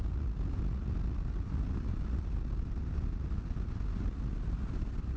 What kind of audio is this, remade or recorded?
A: recorded